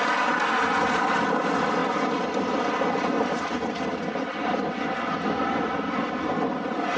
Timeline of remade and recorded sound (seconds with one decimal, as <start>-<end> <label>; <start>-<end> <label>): 0.0-7.0 recorded